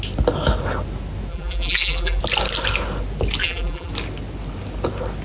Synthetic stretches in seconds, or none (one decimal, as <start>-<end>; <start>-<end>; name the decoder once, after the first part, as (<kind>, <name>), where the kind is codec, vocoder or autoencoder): 1.3-2.2 (vocoder, BigVGAN v2); 3.4-3.9